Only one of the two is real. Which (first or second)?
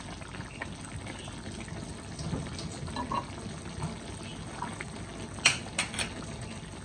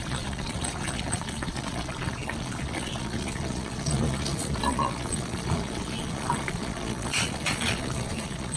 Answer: first